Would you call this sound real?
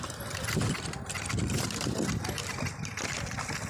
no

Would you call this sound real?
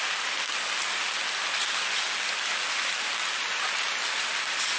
yes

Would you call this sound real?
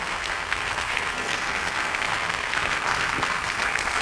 no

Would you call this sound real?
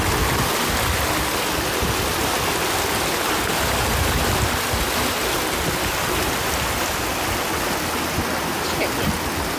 yes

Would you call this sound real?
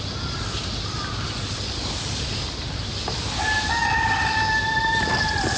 yes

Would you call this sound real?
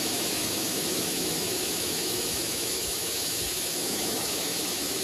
no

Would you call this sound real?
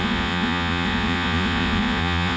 no